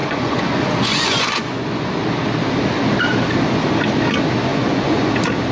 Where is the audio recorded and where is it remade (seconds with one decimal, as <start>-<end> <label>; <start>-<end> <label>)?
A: 0.0-1.9 remade; 1.9-4.5 recorded; 4.5-5.1 remade; 5.1-5.5 recorded